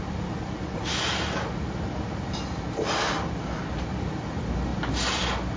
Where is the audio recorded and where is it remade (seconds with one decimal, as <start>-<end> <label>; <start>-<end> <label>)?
0.0-5.6 recorded